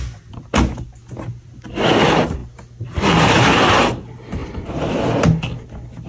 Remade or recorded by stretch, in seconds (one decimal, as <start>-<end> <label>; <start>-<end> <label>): 0.0-6.1 recorded